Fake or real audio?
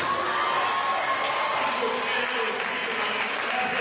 real